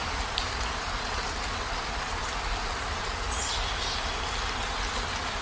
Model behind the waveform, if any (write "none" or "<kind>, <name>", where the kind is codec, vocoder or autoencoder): none